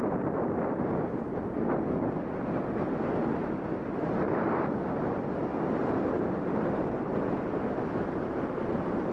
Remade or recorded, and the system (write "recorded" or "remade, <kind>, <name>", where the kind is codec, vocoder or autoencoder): recorded